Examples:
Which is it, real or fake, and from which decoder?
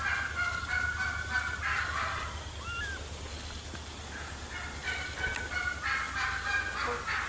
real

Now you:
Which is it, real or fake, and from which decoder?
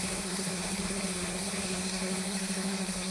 fake, codec, SNAC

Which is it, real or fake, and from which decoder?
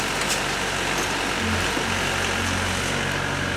real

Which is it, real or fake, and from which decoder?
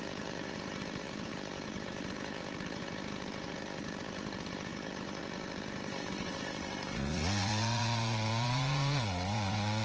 fake, vocoder, Vocos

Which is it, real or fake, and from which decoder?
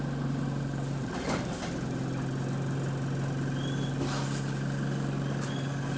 real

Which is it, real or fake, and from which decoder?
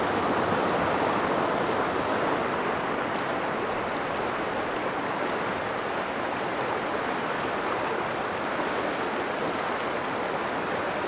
real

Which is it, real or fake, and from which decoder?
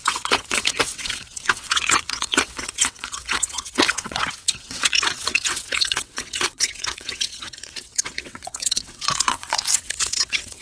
fake, vocoder, WaveNeXt